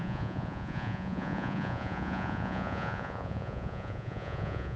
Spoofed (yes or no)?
yes